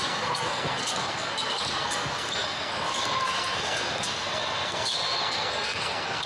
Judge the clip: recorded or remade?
remade